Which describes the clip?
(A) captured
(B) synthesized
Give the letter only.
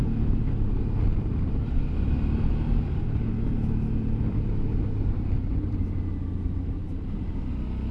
A